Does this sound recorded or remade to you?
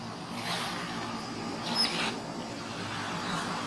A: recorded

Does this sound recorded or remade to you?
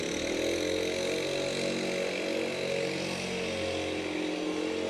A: recorded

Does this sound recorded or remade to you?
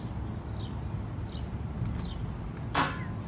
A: recorded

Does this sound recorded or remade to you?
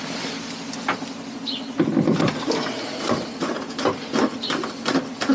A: recorded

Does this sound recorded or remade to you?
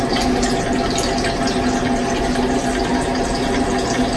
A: recorded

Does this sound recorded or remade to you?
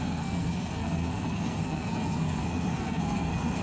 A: remade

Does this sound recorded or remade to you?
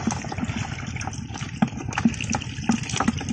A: recorded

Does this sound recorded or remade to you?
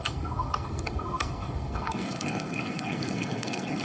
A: remade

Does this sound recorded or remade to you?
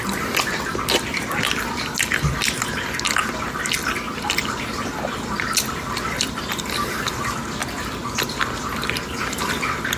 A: recorded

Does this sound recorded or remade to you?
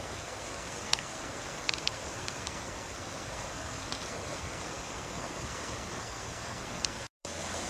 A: remade